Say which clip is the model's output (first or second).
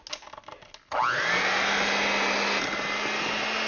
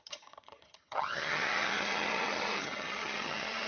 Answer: second